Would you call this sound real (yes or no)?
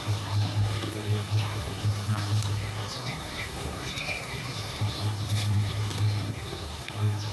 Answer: no